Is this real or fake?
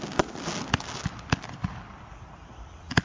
real